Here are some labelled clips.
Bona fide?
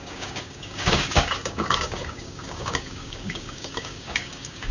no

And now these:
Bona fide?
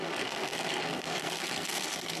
no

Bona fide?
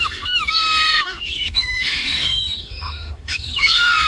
no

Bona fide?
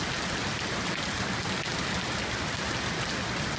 yes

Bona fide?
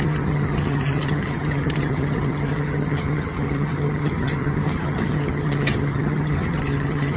no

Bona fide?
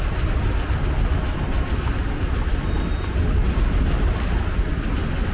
yes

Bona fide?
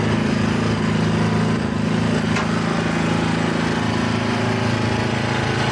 yes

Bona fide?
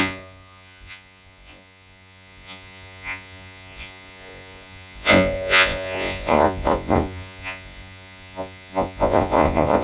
no